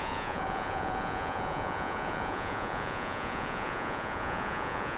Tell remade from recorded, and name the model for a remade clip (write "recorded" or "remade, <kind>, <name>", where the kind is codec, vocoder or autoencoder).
remade, vocoder, Vocos